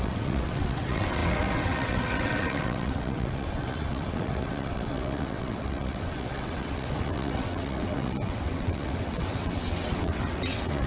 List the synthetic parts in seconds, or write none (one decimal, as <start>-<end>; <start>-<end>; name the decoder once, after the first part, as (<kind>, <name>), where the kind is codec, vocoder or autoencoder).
0.0-10.9 (vocoder, WaveNeXt)